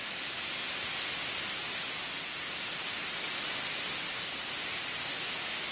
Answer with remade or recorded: recorded